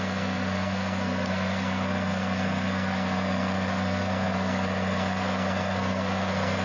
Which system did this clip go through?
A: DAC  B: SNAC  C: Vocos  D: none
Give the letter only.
B